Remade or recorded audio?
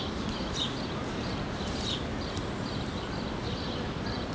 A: recorded